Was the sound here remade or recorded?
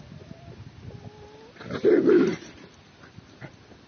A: recorded